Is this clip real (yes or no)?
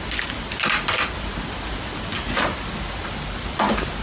yes